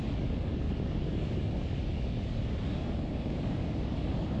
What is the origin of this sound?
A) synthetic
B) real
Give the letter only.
A